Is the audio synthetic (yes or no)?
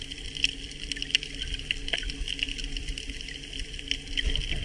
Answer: no